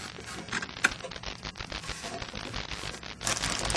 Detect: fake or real real